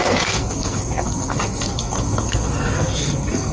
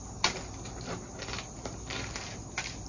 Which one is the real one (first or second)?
second